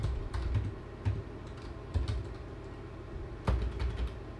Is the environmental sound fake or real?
real